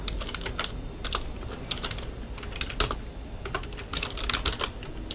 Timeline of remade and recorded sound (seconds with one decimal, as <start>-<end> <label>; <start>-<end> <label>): 0.0-5.1 recorded